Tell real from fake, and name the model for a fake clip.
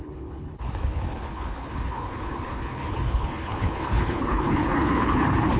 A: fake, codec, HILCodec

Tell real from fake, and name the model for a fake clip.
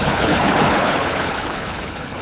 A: fake, codec, HILCodec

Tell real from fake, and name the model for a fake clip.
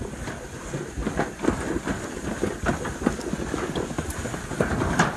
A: real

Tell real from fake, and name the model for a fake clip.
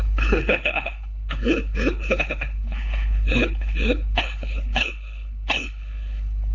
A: fake, codec, HILCodec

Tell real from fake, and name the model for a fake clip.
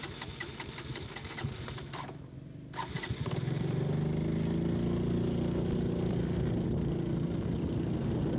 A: real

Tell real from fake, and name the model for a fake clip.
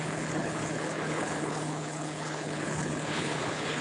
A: fake, codec, HILCodec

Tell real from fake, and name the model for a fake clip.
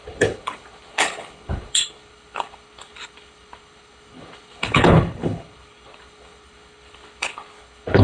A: fake, codec, HILCodec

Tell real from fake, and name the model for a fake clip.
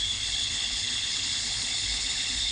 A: fake, codec, HILCodec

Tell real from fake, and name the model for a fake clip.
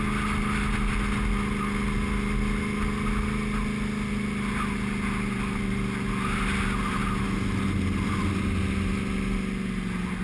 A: real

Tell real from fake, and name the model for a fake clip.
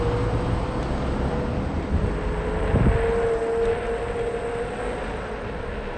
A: real